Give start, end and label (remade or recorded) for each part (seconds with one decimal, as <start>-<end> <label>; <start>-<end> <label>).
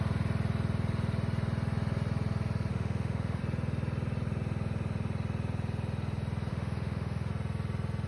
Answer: 0.0-2.7 recorded; 2.7-3.4 remade; 3.4-6.5 recorded; 6.5-7.3 remade; 7.3-8.1 recorded